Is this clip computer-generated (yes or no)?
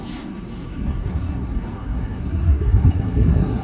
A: yes